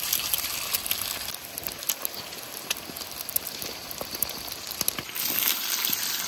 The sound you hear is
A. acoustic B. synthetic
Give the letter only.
A